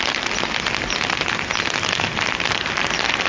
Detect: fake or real fake